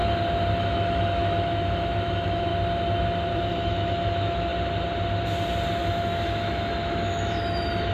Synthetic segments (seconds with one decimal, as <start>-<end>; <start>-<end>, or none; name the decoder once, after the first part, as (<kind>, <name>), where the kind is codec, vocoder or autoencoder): 0.6-2.5 (autoencoder, DAC-VAE); 3.5-4.5; 5.8-7.9